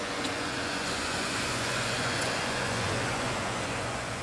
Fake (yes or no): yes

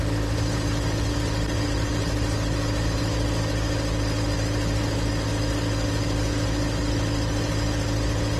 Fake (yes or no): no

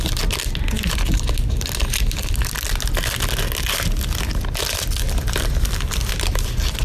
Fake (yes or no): no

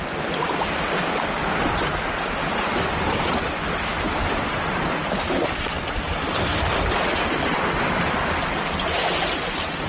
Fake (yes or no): no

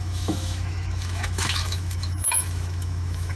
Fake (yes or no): yes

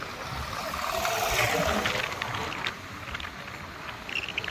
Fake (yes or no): no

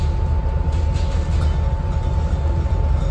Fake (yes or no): no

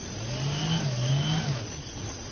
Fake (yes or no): no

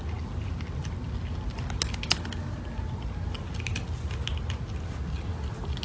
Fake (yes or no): no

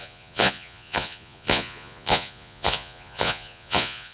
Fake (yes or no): yes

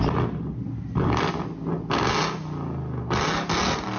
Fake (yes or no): no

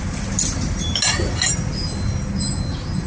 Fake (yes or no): no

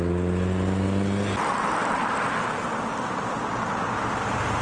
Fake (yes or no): no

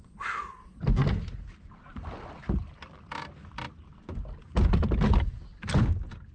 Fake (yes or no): no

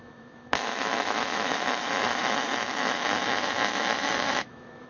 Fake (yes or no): yes